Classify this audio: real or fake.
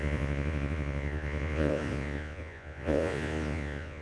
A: fake